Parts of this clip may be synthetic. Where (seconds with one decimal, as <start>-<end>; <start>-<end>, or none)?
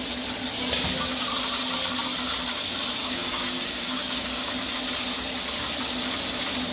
3.0-4.5